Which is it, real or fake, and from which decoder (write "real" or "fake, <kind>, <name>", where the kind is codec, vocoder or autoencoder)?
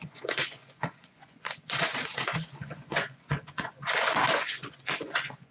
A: fake, vocoder, Vocos